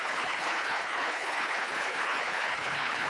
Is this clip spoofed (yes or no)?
yes